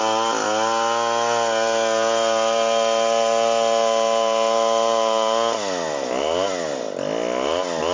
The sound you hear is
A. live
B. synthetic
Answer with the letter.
A